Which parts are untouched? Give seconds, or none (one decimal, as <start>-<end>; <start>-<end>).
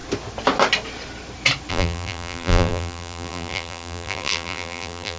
0.0-1.7